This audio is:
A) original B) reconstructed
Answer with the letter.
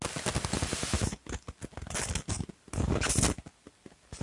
A